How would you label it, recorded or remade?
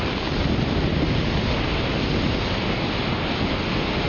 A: recorded